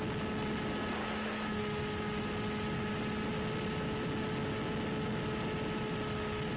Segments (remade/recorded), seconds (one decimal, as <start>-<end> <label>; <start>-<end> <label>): 0.0-1.0 recorded; 1.0-1.6 remade; 1.6-6.6 recorded